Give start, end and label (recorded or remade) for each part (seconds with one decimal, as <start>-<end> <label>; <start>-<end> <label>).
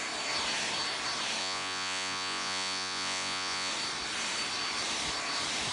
0.0-1.4 recorded; 1.4-3.7 remade; 3.7-5.7 recorded